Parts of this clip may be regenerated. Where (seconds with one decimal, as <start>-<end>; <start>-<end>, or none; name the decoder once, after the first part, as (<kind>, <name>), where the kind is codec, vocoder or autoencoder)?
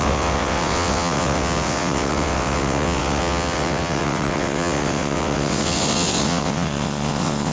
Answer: 0.0-7.5 (vocoder, WaveNeXt)